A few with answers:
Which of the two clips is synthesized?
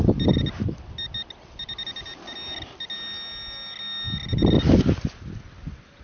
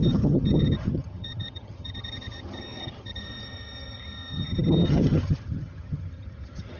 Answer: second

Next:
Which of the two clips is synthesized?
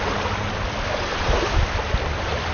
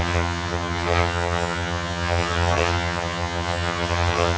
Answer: second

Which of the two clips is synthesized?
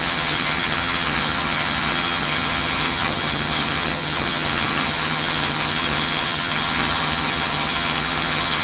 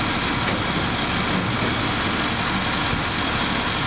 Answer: first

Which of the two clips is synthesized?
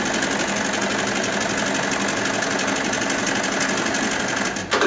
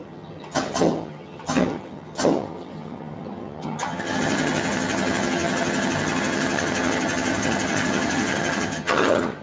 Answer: second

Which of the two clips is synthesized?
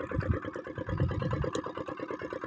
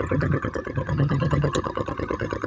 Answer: second